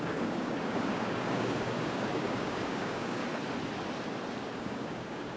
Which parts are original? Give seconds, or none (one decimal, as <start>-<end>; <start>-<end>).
3.2-4.5